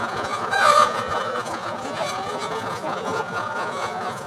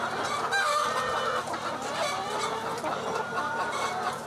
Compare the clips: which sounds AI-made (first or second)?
first